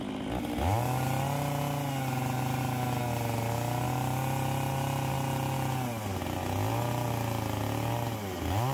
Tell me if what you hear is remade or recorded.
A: recorded